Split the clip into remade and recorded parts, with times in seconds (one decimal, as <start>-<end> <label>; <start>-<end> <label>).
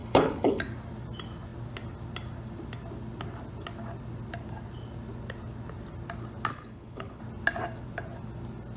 0.0-0.6 remade; 0.6-6.5 recorded; 6.5-7.2 remade; 7.2-8.8 recorded